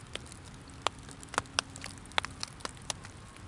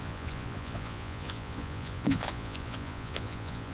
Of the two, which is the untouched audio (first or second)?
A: first